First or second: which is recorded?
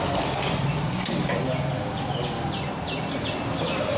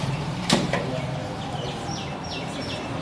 first